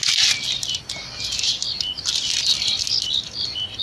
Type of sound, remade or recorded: recorded